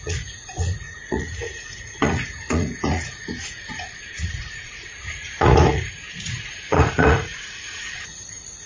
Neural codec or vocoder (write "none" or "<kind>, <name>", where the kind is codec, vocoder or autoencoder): vocoder, Vocos